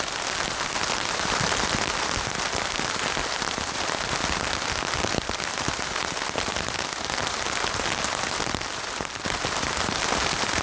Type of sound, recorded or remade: recorded